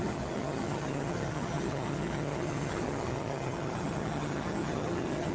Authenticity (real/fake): fake